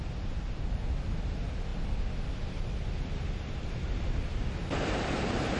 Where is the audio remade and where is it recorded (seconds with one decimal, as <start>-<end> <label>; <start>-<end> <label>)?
0.0-5.6 recorded